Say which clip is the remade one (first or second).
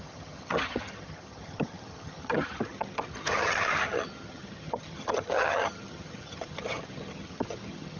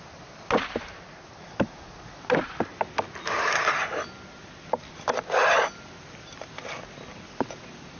first